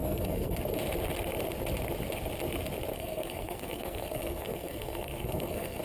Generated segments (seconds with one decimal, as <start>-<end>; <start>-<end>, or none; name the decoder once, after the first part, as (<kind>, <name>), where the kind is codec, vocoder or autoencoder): 0.0-0.6 (codec, SNAC); 2.9-5.8